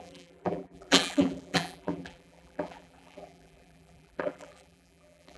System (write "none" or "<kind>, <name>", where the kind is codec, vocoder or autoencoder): vocoder, BigVGAN v2